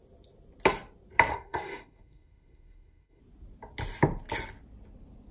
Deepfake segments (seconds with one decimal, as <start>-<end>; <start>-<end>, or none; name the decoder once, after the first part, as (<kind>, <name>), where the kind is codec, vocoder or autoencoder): 1.3-3.2 (codec, SNAC)